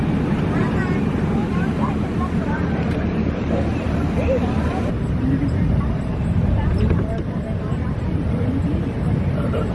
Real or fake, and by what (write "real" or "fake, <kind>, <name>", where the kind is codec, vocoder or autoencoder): fake, vocoder, BigVGAN v2